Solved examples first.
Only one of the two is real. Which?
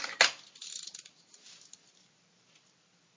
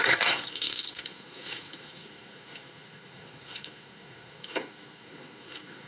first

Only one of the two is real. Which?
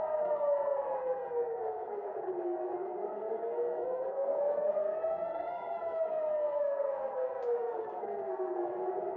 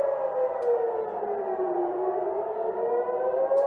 second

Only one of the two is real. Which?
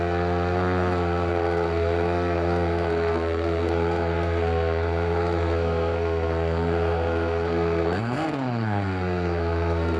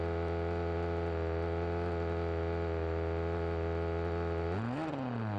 second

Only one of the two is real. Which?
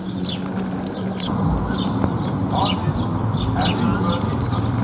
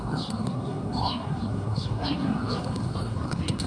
first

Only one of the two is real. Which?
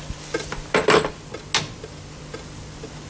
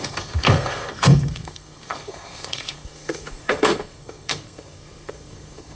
first